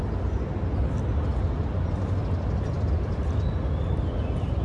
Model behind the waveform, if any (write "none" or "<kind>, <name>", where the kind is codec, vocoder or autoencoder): none